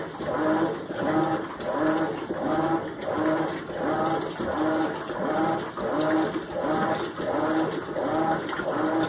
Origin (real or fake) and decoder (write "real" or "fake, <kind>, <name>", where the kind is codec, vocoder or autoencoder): real